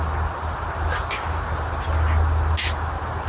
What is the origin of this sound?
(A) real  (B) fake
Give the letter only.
A